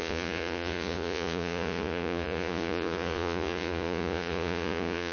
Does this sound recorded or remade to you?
remade